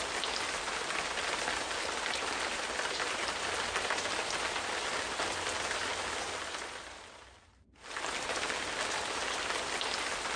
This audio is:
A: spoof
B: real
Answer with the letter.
B